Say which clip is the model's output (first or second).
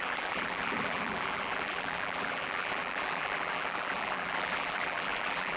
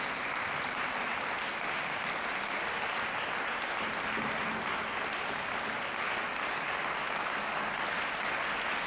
first